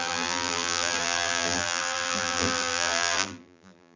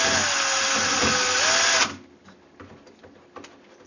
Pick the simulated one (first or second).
first